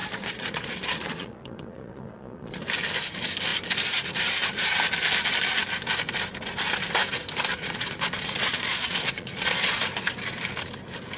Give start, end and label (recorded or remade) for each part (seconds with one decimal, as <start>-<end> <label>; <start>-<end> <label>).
0.0-2.6 remade; 2.6-7.5 recorded; 7.5-9.8 remade; 9.8-11.2 recorded